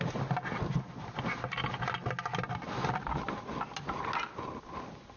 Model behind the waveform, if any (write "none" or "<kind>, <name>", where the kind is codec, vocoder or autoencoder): none